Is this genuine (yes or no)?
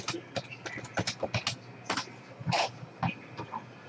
yes